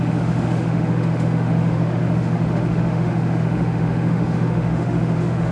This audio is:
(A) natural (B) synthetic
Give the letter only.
B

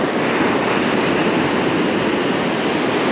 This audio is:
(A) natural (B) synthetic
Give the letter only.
A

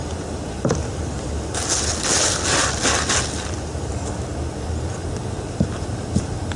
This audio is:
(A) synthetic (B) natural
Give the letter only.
B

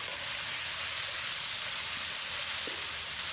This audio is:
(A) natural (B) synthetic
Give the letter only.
A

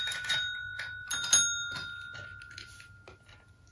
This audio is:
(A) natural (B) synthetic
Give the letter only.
A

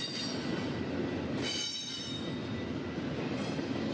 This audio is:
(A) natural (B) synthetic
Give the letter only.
A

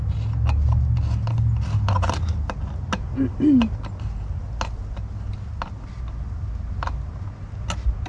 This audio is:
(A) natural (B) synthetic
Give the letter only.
A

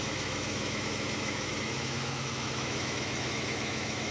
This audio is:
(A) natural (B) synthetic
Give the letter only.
B